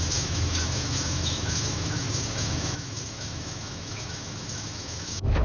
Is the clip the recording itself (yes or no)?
no